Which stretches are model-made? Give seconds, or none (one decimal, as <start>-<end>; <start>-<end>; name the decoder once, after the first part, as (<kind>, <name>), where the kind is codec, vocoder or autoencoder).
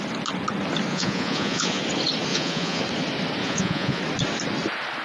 0.9-1.8 (vocoder, Vocos); 2.3-2.8; 3.4-4.0